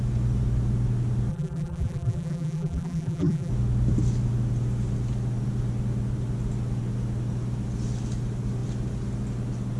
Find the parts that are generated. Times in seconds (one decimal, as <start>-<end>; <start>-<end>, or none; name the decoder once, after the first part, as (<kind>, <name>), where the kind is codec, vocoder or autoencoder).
1.3-3.5 (vocoder, BigVGAN v2)